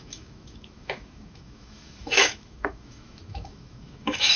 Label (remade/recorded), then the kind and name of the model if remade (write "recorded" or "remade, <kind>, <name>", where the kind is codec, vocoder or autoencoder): remade, autoencoder, DAC-VAE